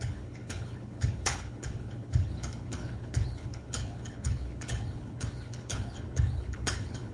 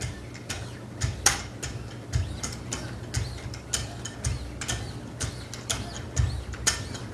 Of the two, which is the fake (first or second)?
first